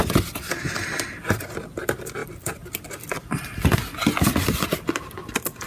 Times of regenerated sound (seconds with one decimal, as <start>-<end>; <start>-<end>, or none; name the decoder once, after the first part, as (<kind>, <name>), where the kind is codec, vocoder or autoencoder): none